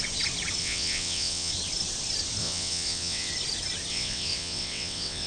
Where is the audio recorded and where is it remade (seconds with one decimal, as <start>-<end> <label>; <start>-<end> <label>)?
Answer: 0.0-0.6 recorded; 0.6-1.5 remade; 1.5-2.4 recorded; 2.4-3.3 remade; 3.3-3.9 recorded; 3.9-5.3 remade